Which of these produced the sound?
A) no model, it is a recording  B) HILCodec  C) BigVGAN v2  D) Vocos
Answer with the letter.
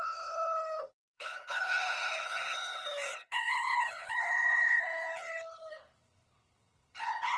B